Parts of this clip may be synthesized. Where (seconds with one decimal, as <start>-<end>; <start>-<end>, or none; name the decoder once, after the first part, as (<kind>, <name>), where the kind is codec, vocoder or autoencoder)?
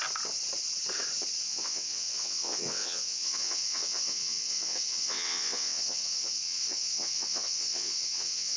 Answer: 1.4-8.6 (vocoder, WaveNeXt)